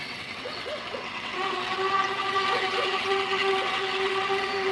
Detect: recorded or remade remade